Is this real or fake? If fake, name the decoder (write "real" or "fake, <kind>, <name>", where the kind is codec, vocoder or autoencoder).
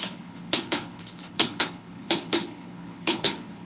fake, codec, HILCodec